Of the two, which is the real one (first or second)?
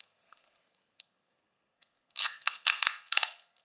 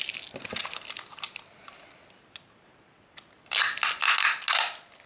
second